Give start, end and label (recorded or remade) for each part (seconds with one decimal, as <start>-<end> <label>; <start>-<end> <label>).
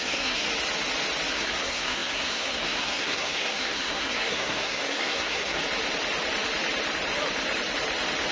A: 0.0-0.5 remade; 0.5-1.3 recorded; 1.3-5.6 remade; 5.6-8.3 recorded